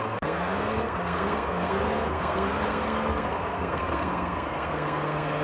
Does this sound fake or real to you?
fake